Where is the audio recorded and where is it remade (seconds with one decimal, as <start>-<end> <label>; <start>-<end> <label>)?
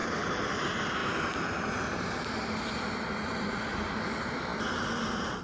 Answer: 0.0-5.4 recorded